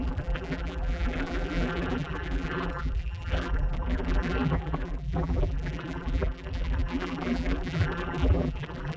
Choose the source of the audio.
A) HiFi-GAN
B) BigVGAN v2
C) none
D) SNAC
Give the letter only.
B